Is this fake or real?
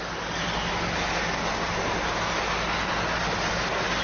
real